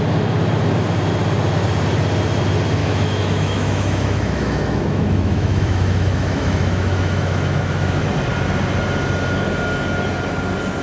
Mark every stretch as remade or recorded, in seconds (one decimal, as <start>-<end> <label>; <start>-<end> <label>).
0.0-2.8 recorded; 2.8-8.0 remade; 8.0-10.8 recorded